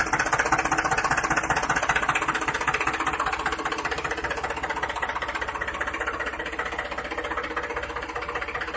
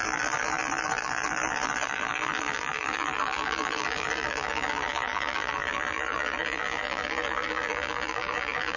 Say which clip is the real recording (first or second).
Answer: first